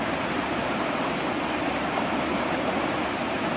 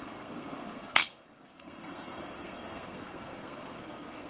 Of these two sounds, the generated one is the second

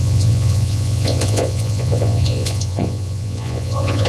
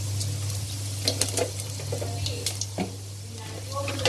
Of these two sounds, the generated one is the first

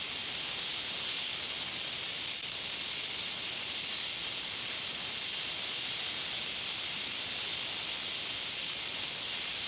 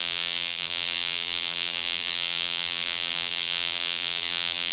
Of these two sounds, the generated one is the second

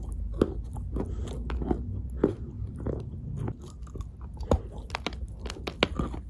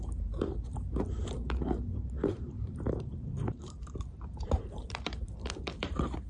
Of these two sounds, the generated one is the second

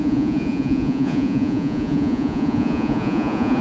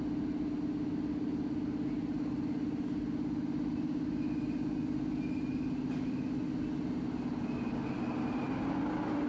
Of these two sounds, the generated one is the first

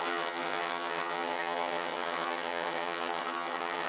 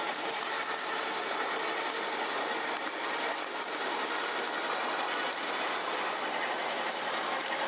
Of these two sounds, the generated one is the first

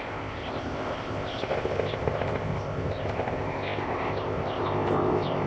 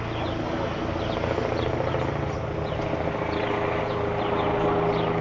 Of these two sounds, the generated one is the first